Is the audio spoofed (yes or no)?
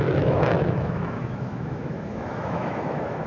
yes